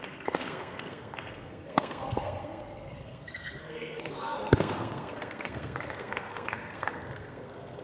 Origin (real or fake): fake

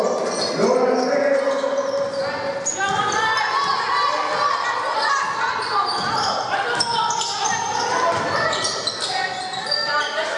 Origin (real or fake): real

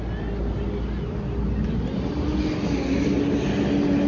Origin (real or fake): real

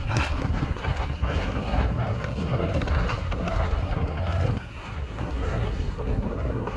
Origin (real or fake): fake